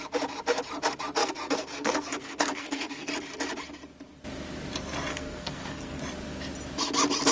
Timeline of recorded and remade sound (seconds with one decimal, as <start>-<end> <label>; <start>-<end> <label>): 0.0-1.2 recorded; 1.2-3.1 remade; 3.1-5.1 recorded; 5.1-6.0 remade; 6.0-7.3 recorded

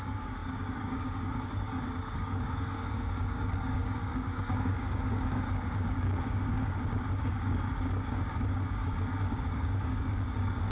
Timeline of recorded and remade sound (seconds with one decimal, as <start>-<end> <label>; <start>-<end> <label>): 0.0-10.7 remade

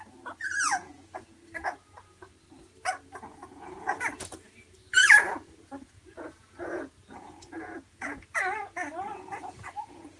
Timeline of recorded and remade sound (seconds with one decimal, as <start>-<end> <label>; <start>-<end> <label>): 0.0-2.3 remade; 2.3-3.0 recorded; 3.0-10.2 remade